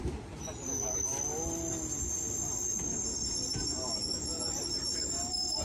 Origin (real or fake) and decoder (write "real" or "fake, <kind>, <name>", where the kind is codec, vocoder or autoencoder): real